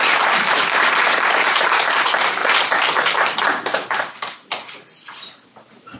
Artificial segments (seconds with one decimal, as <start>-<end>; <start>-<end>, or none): 0.0-2.4; 3.0-6.0